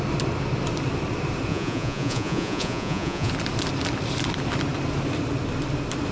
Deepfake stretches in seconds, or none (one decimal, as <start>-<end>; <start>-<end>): 1.5-3.3